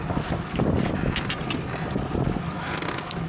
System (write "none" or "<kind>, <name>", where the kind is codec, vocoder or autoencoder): none